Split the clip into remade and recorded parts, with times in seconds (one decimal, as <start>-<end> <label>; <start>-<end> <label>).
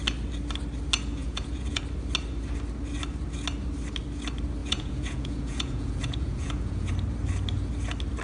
0.0-1.2 recorded; 1.2-1.8 remade; 1.8-4.6 recorded; 4.6-6.9 remade; 6.9-8.2 recorded